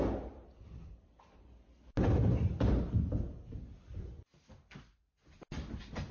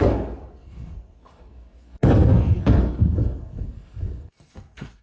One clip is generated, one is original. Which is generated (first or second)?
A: second